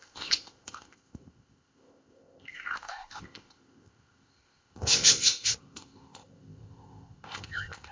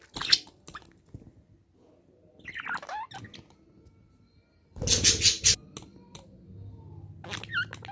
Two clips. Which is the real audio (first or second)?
second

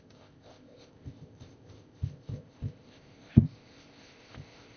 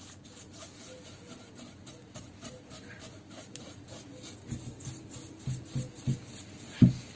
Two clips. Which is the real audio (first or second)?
second